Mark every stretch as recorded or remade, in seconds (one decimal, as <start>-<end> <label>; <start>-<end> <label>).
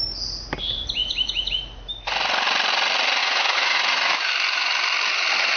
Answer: 0.0-1.0 recorded; 1.0-1.5 remade; 1.5-3.2 recorded; 3.2-4.3 remade; 4.3-5.6 recorded